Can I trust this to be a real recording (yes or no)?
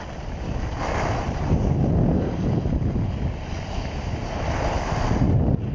yes